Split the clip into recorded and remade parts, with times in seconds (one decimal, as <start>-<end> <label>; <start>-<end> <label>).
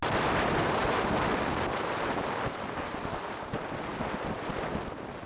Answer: 0.0-5.3 recorded